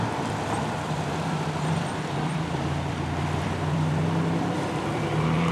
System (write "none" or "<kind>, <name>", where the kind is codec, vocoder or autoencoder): vocoder, BigVGAN v2